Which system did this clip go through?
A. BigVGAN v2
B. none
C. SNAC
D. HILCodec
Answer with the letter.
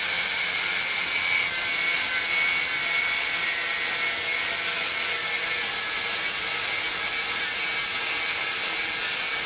B